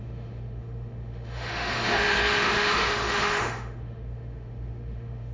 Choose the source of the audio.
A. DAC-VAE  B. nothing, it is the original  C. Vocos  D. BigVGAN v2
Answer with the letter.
A